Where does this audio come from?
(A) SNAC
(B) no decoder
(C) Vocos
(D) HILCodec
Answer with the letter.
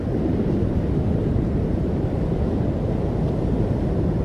B